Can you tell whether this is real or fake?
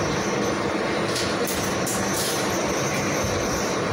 fake